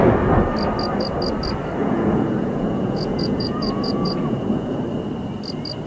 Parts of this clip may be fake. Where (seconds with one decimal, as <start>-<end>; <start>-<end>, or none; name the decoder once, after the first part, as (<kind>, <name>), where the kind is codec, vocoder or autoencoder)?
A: 1.8-4.8 (vocoder, Vocos)